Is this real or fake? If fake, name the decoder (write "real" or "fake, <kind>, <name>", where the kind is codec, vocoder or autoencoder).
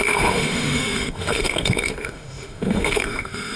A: fake, autoencoder, DAC-VAE